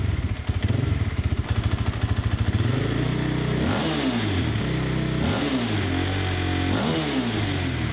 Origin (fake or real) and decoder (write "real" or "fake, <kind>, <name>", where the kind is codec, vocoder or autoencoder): real